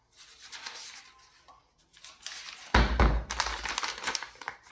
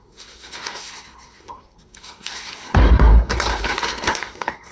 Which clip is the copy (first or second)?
second